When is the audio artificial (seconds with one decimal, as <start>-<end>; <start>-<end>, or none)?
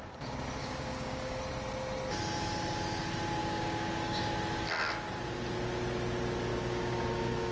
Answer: 0.6-1.4; 3.4-4.3; 6.5-7.5